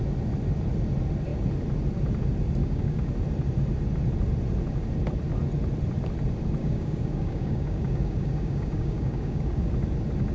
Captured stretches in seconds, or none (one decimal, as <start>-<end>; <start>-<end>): 0.0-2.6; 3.1-6.6; 9.7-10.3